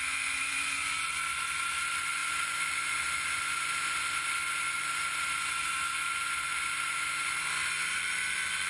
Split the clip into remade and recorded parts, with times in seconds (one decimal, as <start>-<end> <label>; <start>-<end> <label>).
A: 0.0-8.7 remade